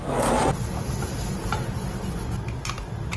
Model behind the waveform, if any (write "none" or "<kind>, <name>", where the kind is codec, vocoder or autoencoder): none